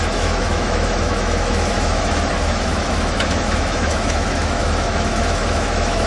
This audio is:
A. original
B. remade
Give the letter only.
B